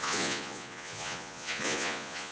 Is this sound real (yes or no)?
no